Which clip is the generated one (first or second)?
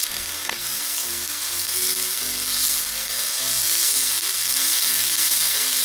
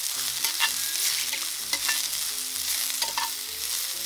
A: first